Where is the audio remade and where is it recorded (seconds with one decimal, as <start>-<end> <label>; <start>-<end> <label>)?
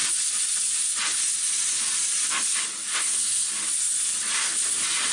0.0-2.9 recorded; 2.9-3.5 remade; 3.5-5.1 recorded